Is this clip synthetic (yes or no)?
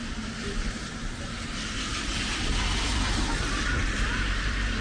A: yes